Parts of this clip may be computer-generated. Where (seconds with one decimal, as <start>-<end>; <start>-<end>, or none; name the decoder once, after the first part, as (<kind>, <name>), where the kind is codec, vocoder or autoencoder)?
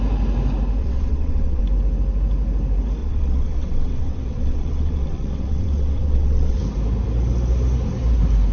0.8-1.6 (vocoder, WaveNeXt); 3.0-6.6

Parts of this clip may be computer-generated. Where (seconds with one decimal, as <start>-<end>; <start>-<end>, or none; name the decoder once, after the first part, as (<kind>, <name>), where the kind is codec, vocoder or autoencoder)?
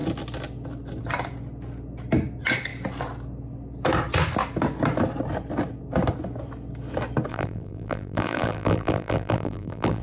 7.3-10.0 (vocoder, BigVGAN v2)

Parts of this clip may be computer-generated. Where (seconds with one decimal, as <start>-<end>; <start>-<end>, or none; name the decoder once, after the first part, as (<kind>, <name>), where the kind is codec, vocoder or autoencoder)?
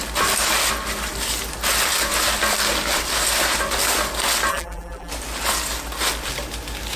4.5-5.1 (vocoder, BigVGAN v2)